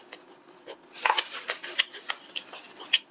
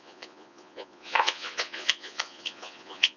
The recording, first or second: first